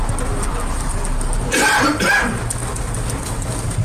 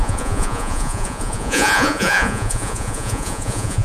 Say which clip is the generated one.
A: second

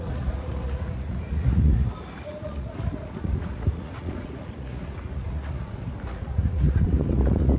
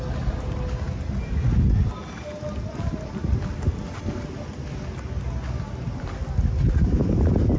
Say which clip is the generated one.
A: first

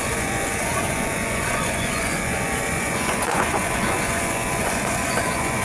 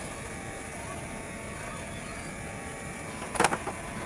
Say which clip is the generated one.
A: first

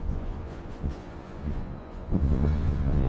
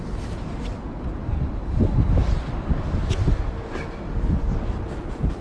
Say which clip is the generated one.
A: first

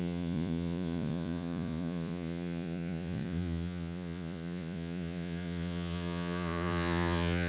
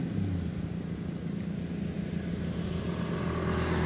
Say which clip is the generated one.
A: first